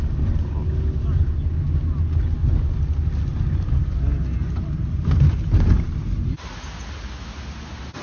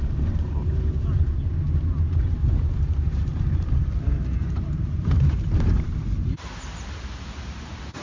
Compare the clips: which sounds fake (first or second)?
second